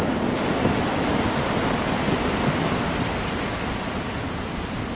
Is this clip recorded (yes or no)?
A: yes